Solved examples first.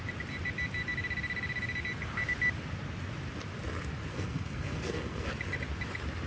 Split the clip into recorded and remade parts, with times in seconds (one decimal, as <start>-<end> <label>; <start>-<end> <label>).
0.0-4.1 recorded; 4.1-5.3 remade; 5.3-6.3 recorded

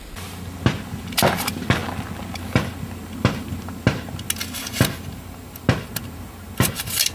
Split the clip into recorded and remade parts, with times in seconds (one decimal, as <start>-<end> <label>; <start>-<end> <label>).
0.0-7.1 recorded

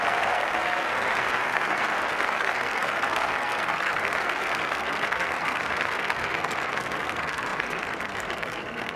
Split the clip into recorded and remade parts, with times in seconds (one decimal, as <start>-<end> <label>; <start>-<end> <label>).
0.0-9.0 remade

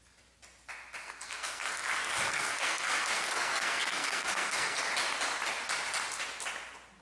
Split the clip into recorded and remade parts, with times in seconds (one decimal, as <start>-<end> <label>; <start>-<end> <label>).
0.0-1.0 recorded; 1.0-4.8 remade; 4.8-7.0 recorded

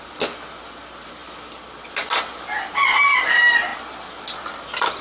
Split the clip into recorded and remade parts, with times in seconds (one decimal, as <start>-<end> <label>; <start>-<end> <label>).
0.0-5.0 recorded

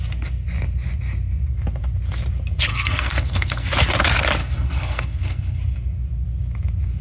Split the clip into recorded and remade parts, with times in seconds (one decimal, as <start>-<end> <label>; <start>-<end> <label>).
0.0-2.7 recorded; 2.7-3.7 remade; 3.7-4.4 recorded; 4.4-5.6 remade; 5.6-7.0 recorded

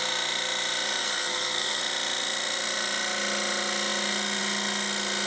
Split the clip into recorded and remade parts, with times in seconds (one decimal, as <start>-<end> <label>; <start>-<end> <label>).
0.0-1.0 recorded; 1.0-1.8 remade; 1.8-5.3 recorded

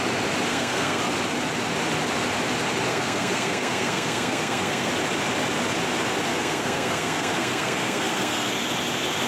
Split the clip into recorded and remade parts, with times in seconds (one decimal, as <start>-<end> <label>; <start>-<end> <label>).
0.0-0.5 recorded; 0.5-1.0 remade; 1.0-2.9 recorded; 2.9-4.9 remade; 4.9-6.3 recorded; 6.3-8.5 remade; 8.5-9.3 recorded